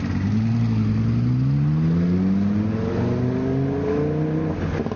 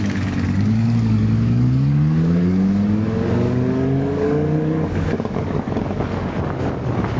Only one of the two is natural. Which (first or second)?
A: first